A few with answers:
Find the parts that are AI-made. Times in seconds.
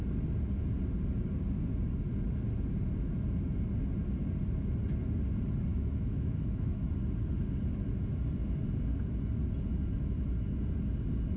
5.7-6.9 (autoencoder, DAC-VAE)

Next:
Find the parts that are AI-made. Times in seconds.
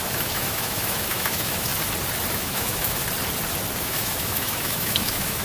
0.0-1.7 (autoencoder, DAC-VAE); 2.3-3.0; 3.8-5.4